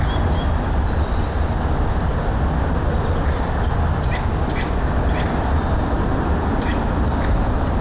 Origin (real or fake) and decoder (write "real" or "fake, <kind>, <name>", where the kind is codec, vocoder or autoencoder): real